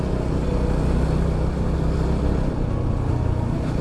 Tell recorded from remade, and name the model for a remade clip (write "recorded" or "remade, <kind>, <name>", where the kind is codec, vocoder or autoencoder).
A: recorded